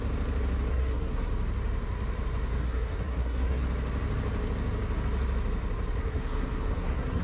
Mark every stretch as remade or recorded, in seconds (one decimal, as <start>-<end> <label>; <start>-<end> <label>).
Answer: 0.0-0.7 recorded; 0.7-1.3 remade; 1.3-2.6 recorded; 2.6-3.6 remade; 3.6-6.0 recorded; 6.0-7.2 remade